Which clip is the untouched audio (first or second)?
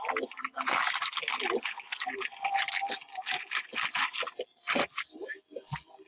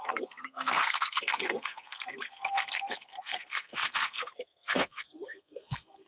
first